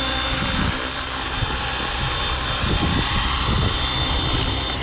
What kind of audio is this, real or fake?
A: real